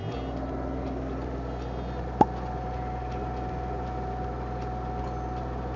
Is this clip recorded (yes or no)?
yes